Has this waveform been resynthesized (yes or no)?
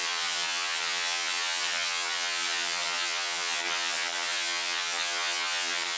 yes